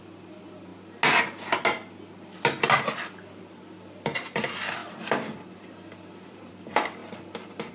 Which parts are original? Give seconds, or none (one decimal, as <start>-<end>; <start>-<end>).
0.7-3.4; 7.0-7.7

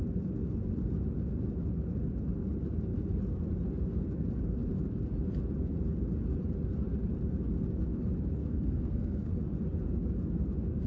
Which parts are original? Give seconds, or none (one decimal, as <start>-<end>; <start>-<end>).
0.0-8.4; 9.4-10.9